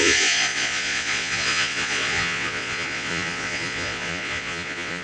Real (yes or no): no